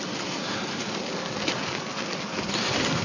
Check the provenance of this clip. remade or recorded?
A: recorded